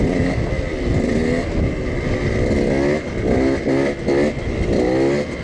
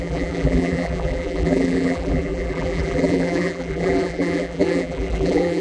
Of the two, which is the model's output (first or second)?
second